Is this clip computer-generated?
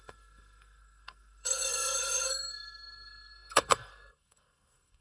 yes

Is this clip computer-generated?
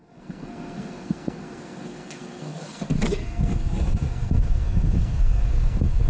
yes